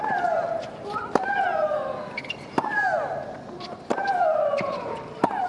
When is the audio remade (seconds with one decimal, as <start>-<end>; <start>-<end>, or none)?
0.0-1.5; 3.8-5.5